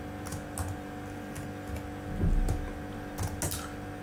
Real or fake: real